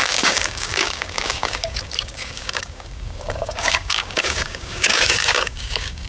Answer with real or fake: fake